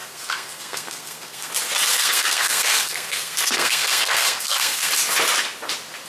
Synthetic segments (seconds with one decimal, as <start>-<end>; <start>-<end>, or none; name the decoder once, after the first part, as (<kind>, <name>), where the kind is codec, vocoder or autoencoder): 0.0-1.5 (codec, SNAC); 1.9-4.9